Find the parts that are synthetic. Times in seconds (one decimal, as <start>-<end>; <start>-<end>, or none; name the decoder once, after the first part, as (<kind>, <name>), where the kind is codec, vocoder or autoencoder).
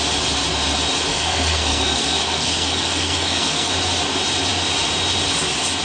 1.1-3.7 (codec, SNAC)